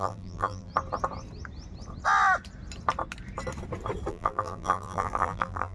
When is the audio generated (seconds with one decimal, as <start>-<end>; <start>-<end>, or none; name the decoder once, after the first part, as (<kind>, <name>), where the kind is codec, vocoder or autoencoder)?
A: 0.0-0.7 (vocoder, BigVGAN v2); 4.1-5.7